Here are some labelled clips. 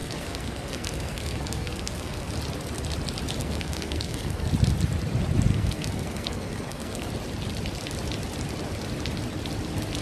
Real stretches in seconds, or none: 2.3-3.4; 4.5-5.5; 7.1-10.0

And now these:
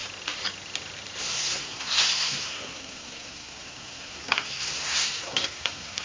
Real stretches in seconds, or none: 0.0-1.2

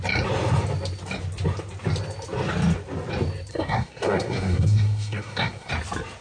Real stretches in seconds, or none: 0.0-3.5; 5.7-6.2

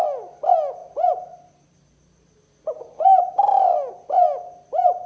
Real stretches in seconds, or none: 0.0-5.1

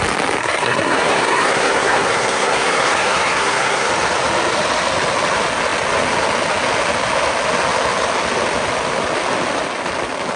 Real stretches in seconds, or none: 0.0-0.4; 3.9-10.4

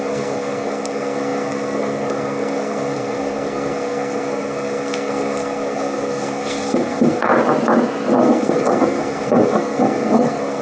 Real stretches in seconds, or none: 7.3-8.2

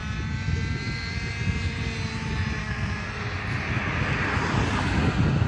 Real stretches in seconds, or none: 0.0-2.6; 3.2-5.5

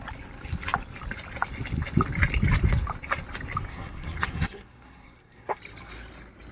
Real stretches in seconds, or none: 0.0-3.7; 5.6-6.5